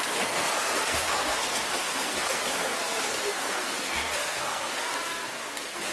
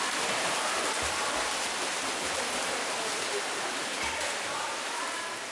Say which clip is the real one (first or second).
second